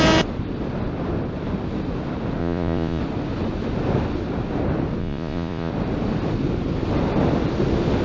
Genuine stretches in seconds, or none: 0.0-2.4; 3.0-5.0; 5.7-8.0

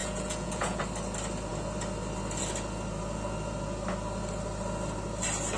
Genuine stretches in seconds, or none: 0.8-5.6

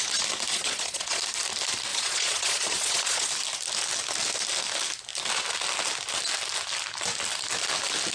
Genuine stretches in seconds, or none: 0.0-0.5; 1.2-1.9; 3.3-8.1

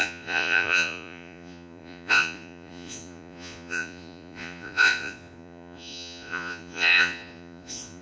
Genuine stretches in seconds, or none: none